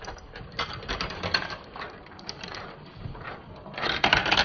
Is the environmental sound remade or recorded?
remade